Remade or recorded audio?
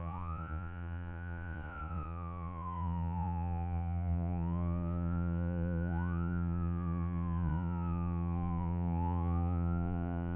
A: remade